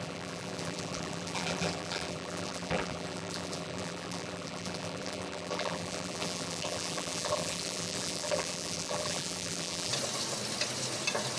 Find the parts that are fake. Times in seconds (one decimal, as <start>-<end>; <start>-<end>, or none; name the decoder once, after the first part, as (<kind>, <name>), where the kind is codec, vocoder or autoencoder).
0.0-9.9 (vocoder, BigVGAN v2)